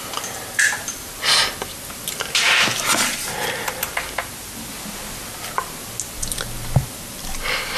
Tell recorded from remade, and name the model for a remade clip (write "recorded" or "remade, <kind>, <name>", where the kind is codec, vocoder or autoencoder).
recorded